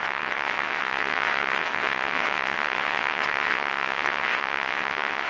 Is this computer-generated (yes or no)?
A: yes